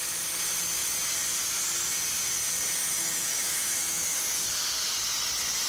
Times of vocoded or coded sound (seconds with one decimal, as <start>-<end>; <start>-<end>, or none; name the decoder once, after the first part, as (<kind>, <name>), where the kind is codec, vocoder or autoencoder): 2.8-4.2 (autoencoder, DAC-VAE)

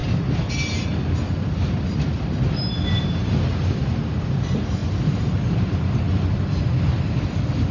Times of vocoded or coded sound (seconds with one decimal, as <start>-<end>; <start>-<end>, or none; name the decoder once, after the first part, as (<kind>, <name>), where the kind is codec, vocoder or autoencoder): none

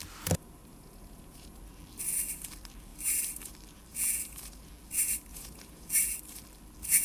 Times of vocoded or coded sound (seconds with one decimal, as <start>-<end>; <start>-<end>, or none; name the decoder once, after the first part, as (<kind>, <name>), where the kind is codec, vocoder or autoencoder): 0.7-1.6 (vocoder, Vocos); 3.9-4.7; 5.3-5.9

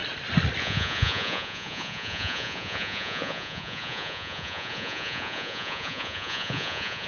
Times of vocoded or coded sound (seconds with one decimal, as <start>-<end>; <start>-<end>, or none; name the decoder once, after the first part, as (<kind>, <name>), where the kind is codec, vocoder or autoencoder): 0.6-7.1 (vocoder, Vocos)

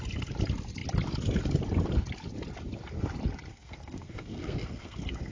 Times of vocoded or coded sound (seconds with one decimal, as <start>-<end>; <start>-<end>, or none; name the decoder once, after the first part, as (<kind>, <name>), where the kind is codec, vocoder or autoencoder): 3.5-5.3 (codec, SNAC)